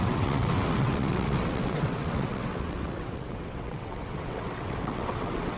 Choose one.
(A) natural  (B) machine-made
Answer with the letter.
B